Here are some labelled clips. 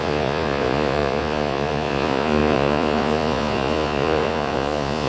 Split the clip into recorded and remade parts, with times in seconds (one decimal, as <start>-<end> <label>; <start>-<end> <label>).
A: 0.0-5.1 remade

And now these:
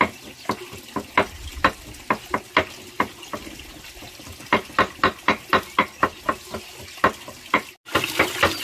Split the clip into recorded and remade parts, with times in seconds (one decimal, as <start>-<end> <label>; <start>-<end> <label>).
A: 0.0-8.6 recorded

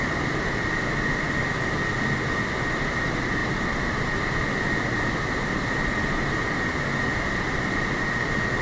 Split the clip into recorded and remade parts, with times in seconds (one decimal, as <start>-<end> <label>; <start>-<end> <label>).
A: 0.0-8.6 recorded

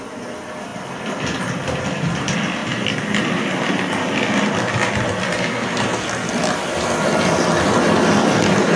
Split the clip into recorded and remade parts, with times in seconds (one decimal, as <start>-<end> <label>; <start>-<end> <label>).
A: 0.0-8.8 recorded

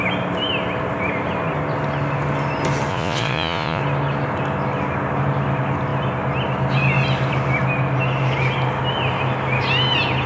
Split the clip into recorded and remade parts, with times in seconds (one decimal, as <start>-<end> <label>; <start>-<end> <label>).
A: 0.0-2.9 recorded; 2.9-3.8 remade; 3.8-10.3 recorded